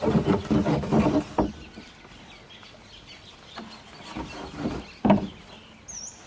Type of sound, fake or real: real